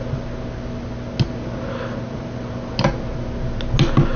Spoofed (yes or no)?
no